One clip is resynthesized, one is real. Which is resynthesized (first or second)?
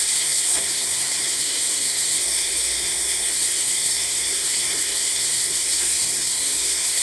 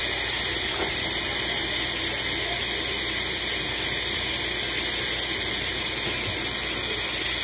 first